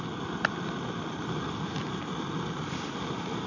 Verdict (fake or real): real